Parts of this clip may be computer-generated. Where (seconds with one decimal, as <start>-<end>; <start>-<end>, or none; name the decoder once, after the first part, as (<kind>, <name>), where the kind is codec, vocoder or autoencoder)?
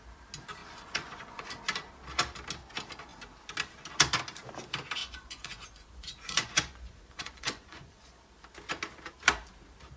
0.6-1.6 (vocoder, Vocos); 5.0-8.2